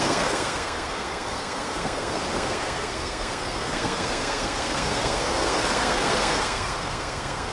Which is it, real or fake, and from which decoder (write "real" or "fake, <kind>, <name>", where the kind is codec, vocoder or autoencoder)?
fake, codec, SNAC